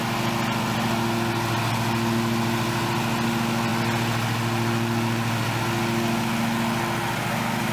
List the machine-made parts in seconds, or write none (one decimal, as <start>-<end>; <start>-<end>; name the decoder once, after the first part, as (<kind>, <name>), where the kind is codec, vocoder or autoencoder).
none